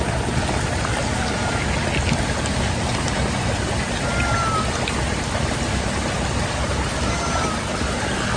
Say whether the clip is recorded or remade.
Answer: recorded